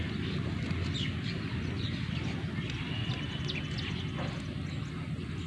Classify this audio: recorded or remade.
recorded